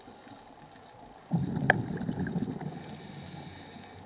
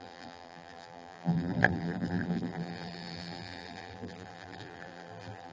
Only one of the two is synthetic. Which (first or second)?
second